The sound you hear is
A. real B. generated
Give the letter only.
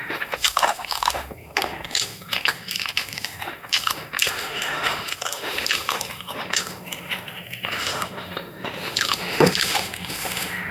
B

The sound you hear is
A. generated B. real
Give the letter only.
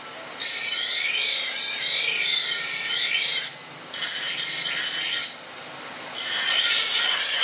B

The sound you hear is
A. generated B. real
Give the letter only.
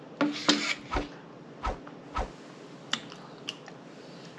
B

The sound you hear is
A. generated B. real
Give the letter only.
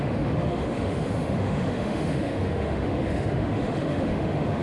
A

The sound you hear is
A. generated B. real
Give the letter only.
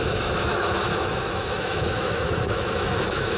A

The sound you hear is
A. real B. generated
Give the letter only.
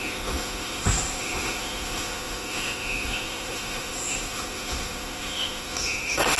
B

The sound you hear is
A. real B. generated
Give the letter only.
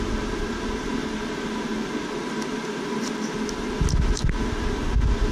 A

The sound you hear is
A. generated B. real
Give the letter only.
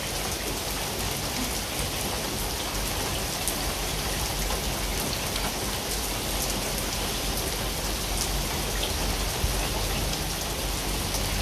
B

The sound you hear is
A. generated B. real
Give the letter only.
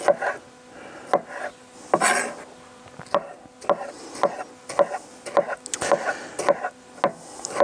B